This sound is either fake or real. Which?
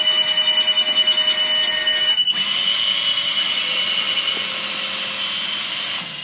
real